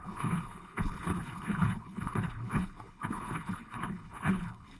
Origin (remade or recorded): remade